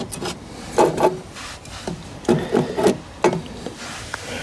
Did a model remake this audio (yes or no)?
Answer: no